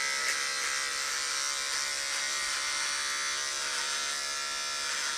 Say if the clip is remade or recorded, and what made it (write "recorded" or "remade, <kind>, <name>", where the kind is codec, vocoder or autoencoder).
recorded